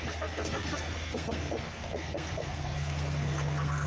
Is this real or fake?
fake